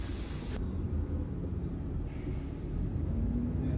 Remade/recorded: recorded